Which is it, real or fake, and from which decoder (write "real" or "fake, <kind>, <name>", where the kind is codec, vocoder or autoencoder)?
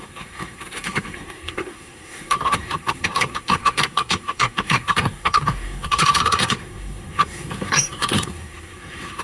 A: fake, codec, SNAC